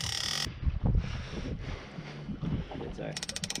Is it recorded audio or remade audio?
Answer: recorded